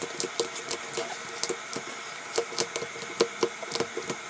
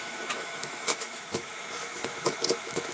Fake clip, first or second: second